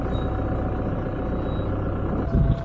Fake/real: real